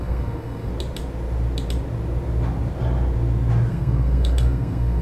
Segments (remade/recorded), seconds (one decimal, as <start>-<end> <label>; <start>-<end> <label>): 0.0-0.7 remade; 0.7-3.7 recorded; 3.7-5.0 remade